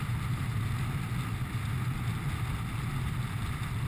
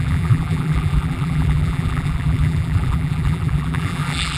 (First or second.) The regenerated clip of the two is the second